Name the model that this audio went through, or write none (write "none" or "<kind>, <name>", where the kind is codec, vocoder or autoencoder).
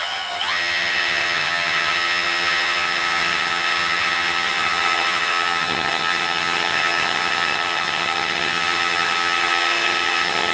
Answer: vocoder, HiFi-GAN